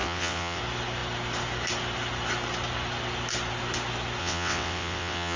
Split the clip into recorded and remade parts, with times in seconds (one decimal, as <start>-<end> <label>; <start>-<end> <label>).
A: 0.0-0.6 remade; 0.6-4.2 recorded; 4.2-5.4 remade